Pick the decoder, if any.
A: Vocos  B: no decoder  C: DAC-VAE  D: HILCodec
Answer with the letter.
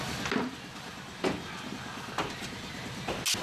B